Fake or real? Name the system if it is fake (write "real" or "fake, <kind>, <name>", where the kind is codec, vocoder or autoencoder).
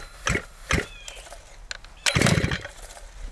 real